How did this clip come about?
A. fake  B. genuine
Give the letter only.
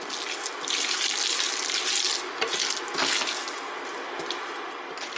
B